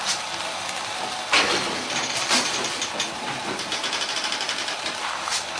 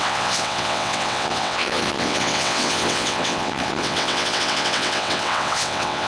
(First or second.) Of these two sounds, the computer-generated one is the second